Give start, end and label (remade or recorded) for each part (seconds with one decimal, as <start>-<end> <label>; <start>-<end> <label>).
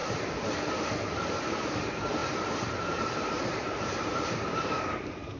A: 0.0-0.5 recorded; 0.5-5.4 remade